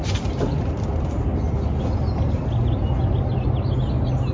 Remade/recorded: recorded